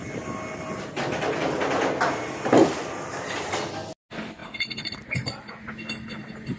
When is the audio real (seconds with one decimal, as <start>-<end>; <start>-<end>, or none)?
0.0-2.6; 3.5-4.4; 5.5-6.6